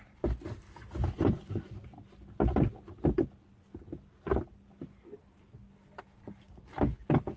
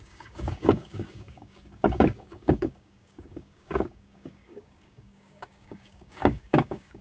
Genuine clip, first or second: first